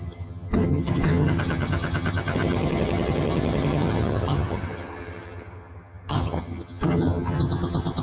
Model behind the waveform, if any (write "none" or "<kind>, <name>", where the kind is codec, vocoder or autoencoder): vocoder, HiFi-GAN